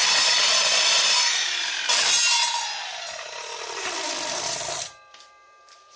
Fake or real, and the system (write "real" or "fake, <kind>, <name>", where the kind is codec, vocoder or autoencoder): fake, vocoder, BigVGAN v2